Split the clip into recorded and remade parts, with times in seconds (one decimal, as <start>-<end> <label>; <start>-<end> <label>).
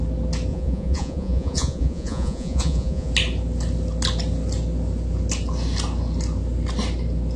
0.0-0.5 recorded; 0.5-3.1 remade; 3.1-7.4 recorded